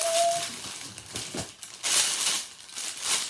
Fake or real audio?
real